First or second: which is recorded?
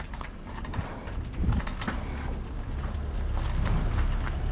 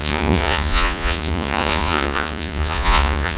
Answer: first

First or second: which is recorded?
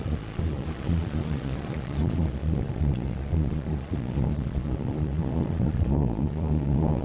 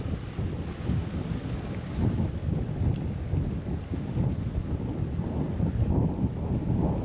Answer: second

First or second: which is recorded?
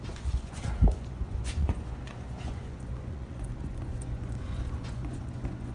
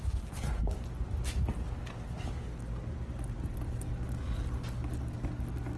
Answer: second